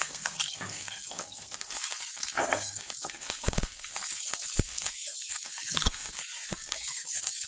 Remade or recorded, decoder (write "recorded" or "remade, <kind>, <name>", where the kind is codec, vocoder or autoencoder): remade, codec, SNAC